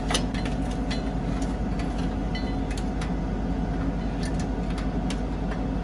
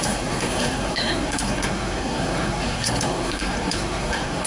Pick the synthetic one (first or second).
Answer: second